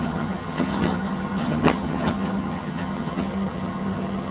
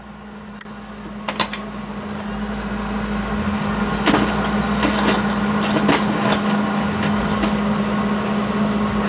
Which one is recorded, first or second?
second